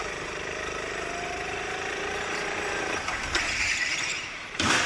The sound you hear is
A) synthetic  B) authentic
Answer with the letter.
A